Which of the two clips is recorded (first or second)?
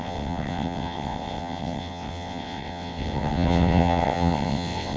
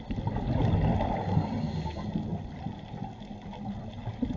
second